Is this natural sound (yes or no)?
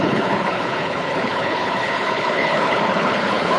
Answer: no